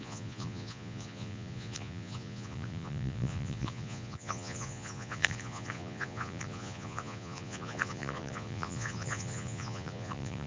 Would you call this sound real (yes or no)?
no